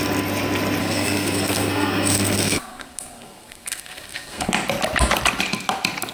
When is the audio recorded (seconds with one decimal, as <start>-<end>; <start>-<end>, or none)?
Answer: 0.0-0.8; 4.5-6.1